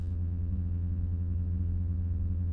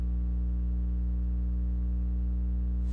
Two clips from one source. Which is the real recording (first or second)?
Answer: second